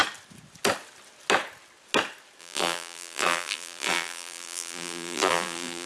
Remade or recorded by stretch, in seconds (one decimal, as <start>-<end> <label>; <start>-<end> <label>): 0.0-2.4 recorded; 2.4-5.9 remade